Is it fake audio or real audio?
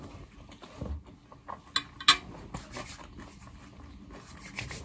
real